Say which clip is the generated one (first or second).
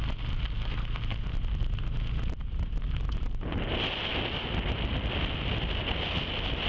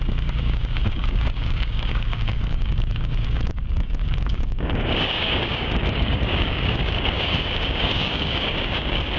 second